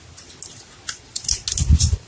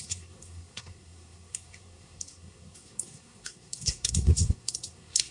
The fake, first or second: second